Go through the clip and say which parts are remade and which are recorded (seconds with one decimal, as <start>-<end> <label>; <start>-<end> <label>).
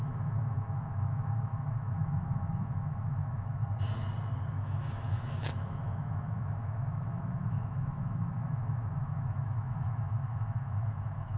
0.0-3.6 remade; 3.6-4.5 recorded; 4.5-11.4 remade